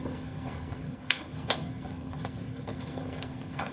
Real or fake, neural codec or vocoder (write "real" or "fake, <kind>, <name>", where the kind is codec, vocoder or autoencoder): fake, codec, SNAC